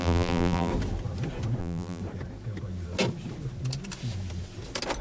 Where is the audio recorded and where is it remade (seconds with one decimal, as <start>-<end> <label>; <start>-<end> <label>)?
0.0-0.7 remade; 0.7-1.6 recorded; 1.6-2.0 remade; 2.0-5.0 recorded